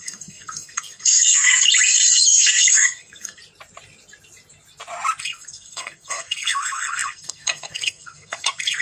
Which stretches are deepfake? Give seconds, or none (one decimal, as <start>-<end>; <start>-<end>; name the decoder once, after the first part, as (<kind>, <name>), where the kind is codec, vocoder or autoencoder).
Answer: 0.0-1.5 (codec, SNAC); 2.3-3.4; 5.2-8.8